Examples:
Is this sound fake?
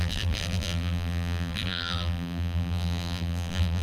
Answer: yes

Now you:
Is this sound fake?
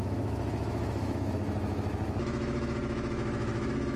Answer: yes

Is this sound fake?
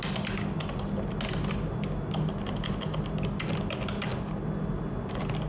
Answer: no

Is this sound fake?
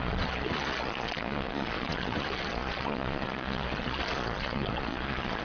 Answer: yes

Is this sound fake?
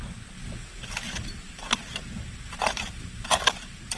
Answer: yes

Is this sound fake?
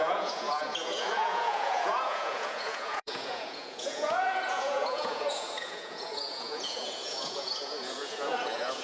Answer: yes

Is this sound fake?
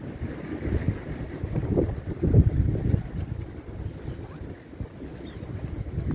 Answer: no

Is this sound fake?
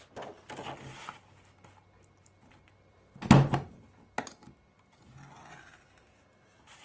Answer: no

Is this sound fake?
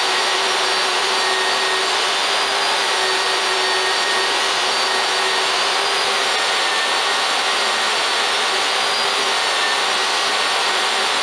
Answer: no